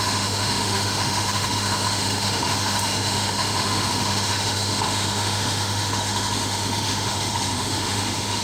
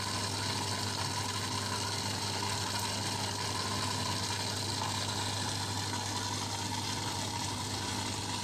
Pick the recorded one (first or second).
second